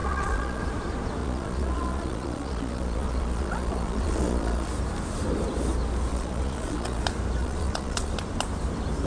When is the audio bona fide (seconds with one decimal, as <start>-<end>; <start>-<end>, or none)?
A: 0.6-1.2; 4.7-6.1; 7.0-7.4; 8.1-9.1